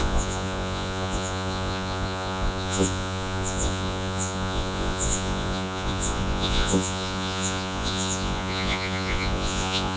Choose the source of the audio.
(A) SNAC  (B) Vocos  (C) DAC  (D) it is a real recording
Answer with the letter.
B